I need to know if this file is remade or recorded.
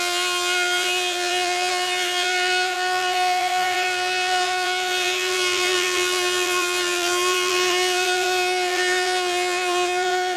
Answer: remade